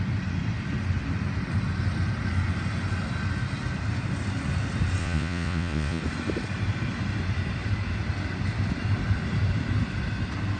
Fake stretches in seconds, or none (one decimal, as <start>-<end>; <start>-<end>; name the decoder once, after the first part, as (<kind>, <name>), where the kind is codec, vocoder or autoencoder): 5.0-6.0 (vocoder, Vocos)

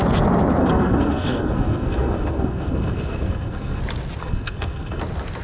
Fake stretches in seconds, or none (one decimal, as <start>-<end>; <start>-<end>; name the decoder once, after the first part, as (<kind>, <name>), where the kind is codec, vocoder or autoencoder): 0.6-3.8 (codec, SNAC); 4.2-5.0

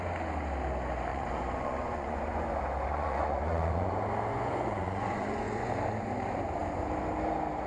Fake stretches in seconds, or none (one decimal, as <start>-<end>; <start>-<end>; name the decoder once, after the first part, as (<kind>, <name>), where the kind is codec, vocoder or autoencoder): 1.1-2.4 (vocoder, Vocos); 2.9-3.9; 4.3-5.7

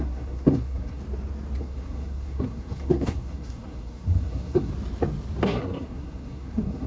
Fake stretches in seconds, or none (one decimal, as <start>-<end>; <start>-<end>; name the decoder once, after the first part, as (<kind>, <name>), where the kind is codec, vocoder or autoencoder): 0.0-1.0 (codec, SNAC); 1.6-4.7; 5.4-6.9

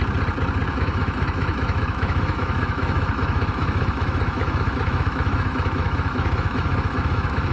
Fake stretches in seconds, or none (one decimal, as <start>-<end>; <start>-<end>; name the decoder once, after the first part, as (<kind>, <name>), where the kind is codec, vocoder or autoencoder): 0.7-7.5 (autoencoder, DAC-VAE)